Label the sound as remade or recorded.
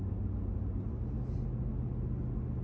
recorded